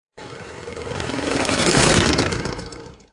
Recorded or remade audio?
remade